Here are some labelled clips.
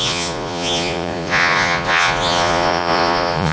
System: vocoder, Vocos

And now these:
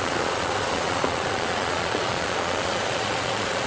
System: vocoder, Vocos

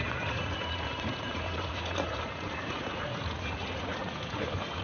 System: vocoder, Vocos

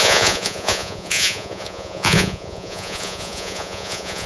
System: vocoder, Vocos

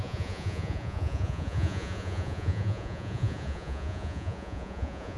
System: vocoder, Vocos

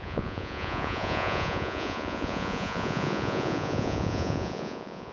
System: vocoder, Vocos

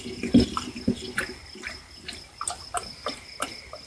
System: none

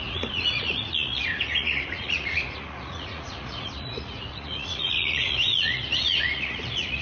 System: vocoder, Vocos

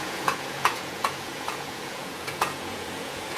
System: vocoder, Vocos